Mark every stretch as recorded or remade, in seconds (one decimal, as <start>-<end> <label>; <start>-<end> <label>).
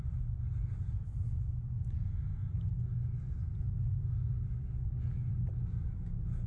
0.0-6.5 recorded